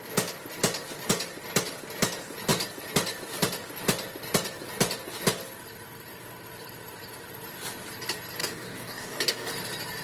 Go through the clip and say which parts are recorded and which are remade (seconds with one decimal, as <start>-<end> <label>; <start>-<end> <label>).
0.0-8.4 recorded; 8.4-9.5 remade; 9.5-10.0 recorded